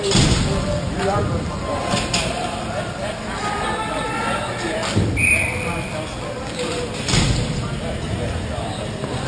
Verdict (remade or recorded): recorded